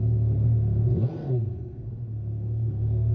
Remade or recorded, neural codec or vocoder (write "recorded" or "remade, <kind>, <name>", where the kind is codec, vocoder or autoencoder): remade, codec, SNAC